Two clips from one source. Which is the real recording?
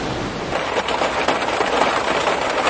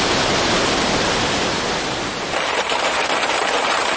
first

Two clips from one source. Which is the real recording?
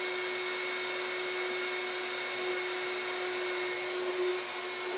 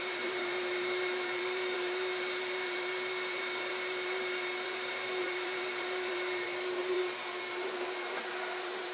first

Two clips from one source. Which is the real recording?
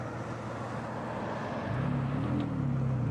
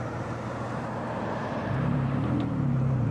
first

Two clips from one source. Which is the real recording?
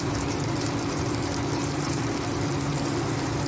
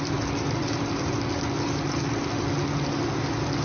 second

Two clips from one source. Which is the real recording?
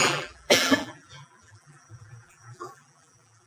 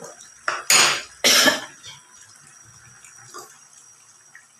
second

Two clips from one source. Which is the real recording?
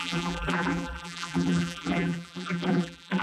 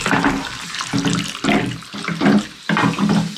second